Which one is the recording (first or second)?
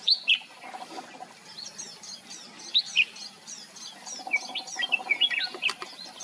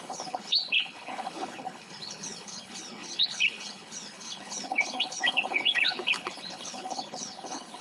first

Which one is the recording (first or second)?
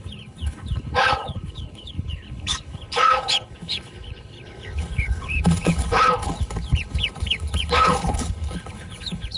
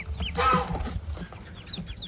second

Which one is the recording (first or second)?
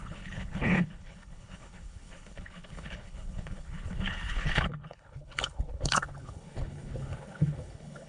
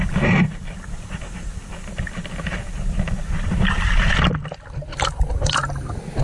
second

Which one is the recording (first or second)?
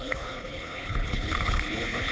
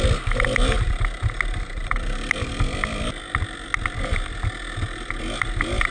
second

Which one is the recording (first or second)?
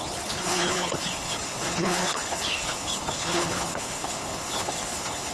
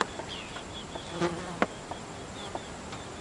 second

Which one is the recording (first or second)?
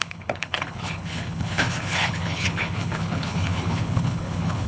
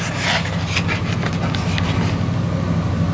second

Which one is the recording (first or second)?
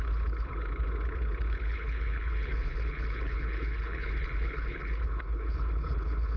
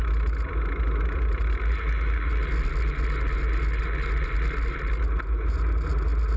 second